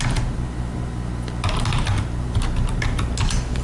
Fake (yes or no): no